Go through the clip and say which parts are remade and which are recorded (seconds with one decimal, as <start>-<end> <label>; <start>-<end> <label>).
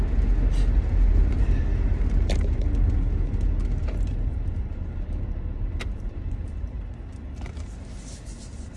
0.0-3.8 recorded; 3.8-4.5 remade; 4.5-5.9 recorded; 5.9-6.8 remade; 6.8-8.8 recorded